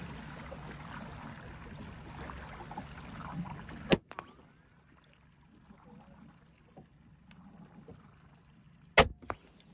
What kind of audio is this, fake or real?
real